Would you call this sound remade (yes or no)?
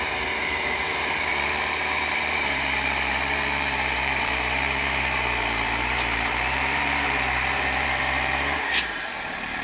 yes